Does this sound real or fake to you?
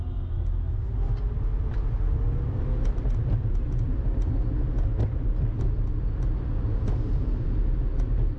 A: real